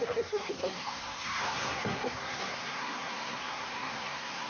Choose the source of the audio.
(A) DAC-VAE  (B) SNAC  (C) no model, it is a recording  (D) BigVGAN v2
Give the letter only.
B